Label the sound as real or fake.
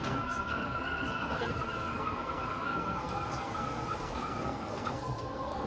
fake